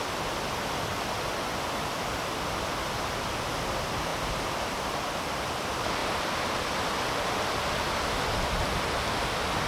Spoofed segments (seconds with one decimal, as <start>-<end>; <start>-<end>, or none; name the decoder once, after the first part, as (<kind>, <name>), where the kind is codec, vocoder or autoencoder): 4.1-5.5 (vocoder, BigVGAN v2); 6.0-6.7